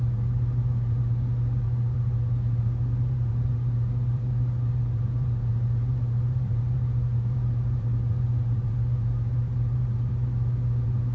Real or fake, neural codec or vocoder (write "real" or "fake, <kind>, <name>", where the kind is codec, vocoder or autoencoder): fake, vocoder, BigVGAN v2